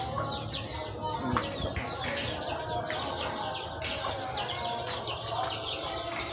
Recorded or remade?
recorded